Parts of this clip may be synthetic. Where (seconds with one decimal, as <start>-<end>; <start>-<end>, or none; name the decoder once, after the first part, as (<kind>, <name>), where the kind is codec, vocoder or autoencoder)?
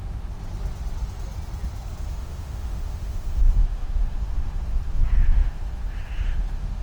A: 0.0-0.4 (autoencoder, DAC-VAE); 2.1-6.8